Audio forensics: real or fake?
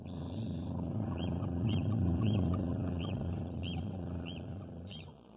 fake